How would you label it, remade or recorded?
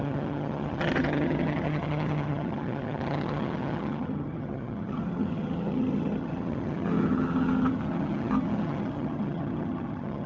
remade